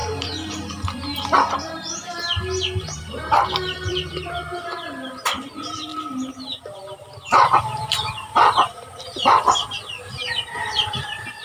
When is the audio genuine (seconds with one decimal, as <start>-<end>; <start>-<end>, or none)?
5.9-6.6

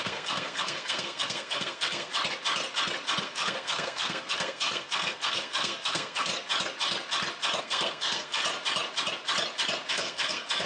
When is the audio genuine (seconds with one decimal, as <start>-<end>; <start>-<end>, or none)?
2.1-3.2; 6.3-7.6; 8.4-9.9

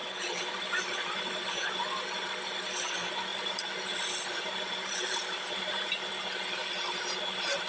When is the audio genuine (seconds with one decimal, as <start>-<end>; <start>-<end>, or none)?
0.0-3.3; 3.8-4.3; 6.1-7.7

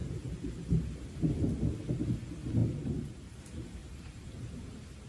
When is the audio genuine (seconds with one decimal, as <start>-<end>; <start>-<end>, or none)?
1.6-2.6; 3.4-3.8